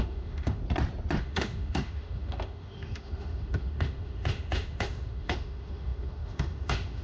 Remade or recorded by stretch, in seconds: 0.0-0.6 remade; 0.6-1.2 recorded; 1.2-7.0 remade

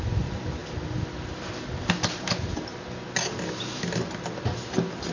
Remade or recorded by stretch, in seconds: 0.0-5.1 recorded

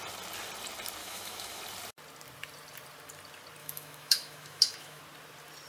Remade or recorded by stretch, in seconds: 0.0-1.0 recorded; 1.0-1.6 remade; 1.6-3.6 recorded; 3.6-5.0 remade; 5.0-5.7 recorded

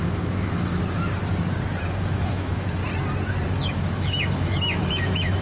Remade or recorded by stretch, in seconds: 0.0-0.7 remade; 0.7-2.0 recorded; 2.0-2.8 remade; 2.8-3.5 recorded; 3.5-5.4 remade

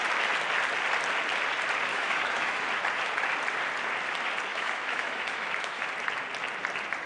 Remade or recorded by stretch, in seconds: 0.0-1.9 recorded; 1.9-2.6 remade; 2.6-4.5 recorded; 4.5-5.9 remade; 5.9-7.1 recorded

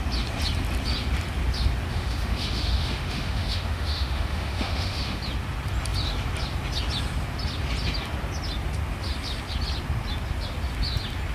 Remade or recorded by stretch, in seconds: 0.0-1.9 recorded; 1.9-5.2 remade; 5.2-11.3 recorded